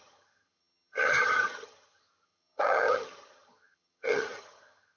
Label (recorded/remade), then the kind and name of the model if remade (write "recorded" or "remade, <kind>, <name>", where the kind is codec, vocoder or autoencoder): remade, vocoder, HiFi-GAN